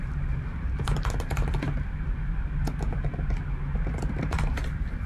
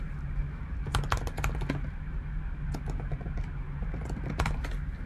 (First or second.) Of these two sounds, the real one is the second